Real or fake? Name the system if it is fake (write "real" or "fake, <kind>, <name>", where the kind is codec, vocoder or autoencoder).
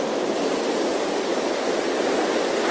real